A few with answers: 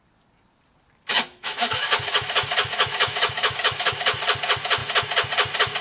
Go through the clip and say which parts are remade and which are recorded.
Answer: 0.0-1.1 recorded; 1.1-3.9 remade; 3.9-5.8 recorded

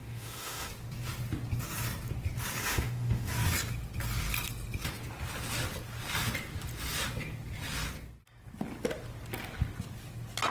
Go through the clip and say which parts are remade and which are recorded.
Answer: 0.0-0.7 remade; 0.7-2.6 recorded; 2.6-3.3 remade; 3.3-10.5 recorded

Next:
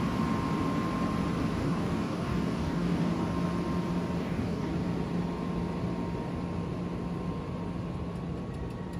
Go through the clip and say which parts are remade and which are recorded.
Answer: 0.0-1.6 recorded; 1.6-3.2 remade; 3.2-4.2 recorded; 4.2-4.7 remade; 4.7-9.0 recorded

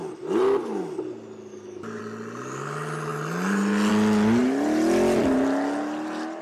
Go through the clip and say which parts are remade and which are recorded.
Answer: 0.0-1.5 recorded; 1.5-2.0 remade; 2.0-6.4 recorded